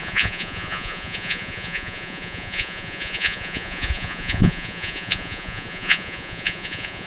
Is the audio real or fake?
fake